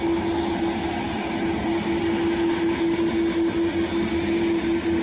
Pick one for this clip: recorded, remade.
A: recorded